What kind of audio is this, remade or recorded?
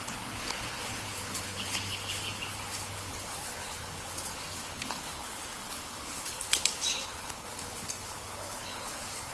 remade